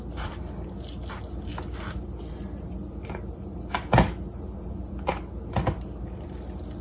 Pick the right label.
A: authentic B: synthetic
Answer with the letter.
A